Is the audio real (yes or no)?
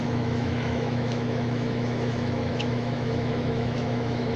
no